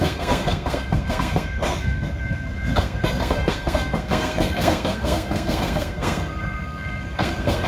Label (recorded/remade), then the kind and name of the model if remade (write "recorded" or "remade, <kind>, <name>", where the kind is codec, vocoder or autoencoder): remade, codec, SNAC